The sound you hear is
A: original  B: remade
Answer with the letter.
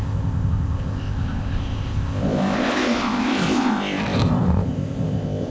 B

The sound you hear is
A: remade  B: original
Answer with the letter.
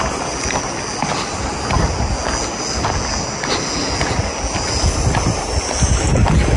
B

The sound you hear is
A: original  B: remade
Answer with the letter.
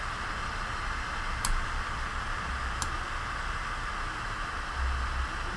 A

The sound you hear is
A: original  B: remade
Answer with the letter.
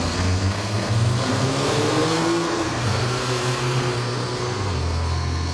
B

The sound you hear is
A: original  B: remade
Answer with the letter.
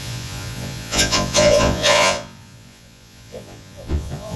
B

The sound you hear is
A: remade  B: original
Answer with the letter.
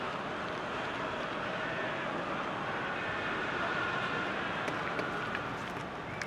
B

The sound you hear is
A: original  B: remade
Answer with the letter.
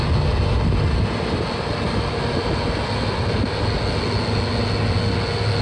A